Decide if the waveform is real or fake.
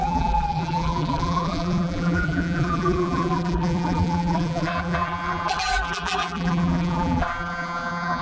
fake